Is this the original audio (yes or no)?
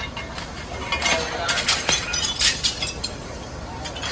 yes